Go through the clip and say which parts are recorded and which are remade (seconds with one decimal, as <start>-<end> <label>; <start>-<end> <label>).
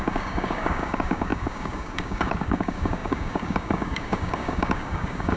0.0-5.4 remade